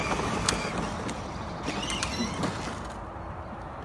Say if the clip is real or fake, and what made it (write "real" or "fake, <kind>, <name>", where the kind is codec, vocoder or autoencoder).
real